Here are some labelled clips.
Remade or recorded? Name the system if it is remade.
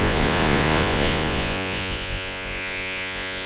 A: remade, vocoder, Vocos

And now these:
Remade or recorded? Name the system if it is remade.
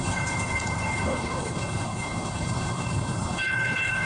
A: remade, codec, HILCodec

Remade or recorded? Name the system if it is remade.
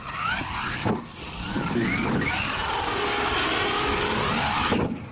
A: recorded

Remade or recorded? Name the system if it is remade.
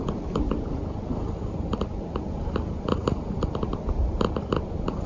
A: recorded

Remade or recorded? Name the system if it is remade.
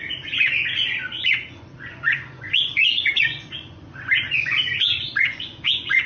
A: remade, vocoder, Vocos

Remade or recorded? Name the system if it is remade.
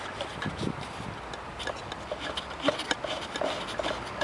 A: recorded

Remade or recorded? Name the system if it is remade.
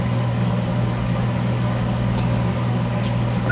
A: remade, codec, DAC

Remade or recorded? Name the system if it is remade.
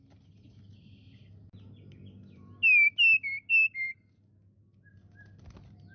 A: recorded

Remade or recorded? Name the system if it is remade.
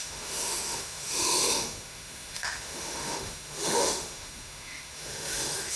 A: remade, autoencoder, DAC-VAE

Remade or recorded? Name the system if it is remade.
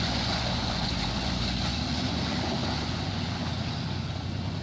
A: remade, vocoder, Vocos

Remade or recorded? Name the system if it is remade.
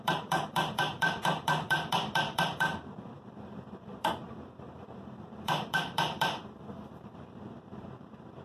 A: remade, vocoder, BigVGAN v2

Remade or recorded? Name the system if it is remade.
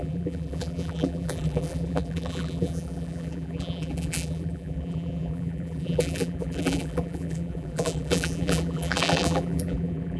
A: remade, vocoder, BigVGAN v2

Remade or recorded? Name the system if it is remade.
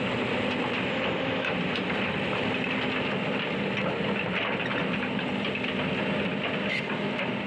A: recorded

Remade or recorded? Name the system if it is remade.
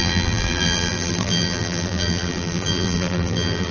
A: remade, vocoder, BigVGAN v2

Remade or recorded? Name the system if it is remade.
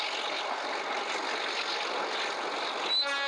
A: recorded